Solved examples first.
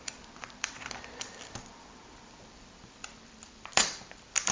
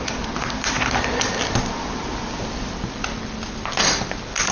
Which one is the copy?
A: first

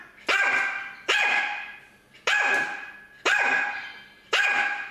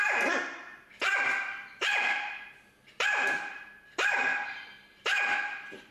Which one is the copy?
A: second